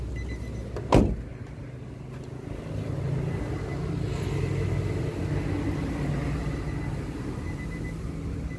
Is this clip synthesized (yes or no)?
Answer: no